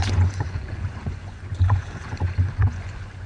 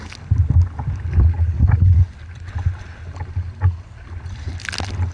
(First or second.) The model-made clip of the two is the first